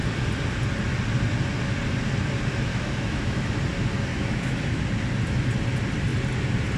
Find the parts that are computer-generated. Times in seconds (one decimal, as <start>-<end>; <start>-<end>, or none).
2.7-3.6; 4.1-4.8